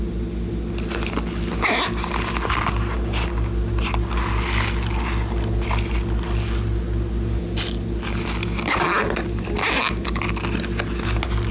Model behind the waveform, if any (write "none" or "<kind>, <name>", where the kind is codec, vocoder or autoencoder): none